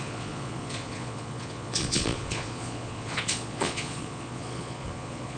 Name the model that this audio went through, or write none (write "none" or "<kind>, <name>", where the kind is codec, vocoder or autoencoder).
vocoder, Vocos